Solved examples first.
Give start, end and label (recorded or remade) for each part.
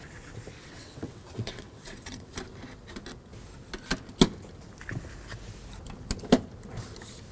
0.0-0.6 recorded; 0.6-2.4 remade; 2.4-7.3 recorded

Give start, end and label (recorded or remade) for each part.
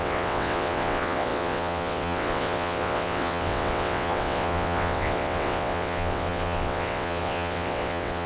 0.0-8.3 remade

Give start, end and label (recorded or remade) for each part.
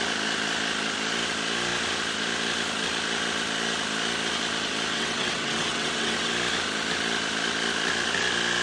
0.0-4.9 recorded; 4.9-6.3 remade; 6.3-8.6 recorded